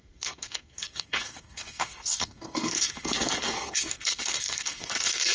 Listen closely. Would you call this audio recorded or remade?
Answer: remade